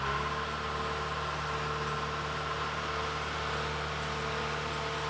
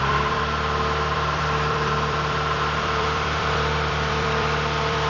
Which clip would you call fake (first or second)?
second